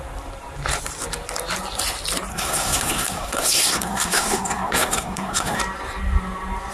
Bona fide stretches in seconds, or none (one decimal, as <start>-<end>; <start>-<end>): 0.0-2.3; 5.6-6.7